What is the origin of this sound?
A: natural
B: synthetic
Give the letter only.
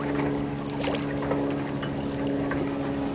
A